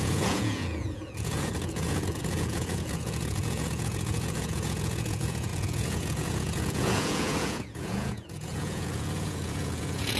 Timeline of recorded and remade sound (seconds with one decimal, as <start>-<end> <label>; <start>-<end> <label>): 0.0-10.2 remade